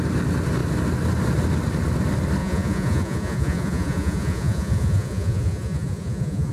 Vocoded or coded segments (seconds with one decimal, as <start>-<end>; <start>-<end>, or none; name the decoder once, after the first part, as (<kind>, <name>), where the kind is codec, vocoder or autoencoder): 2.4-6.5 (vocoder, Vocos)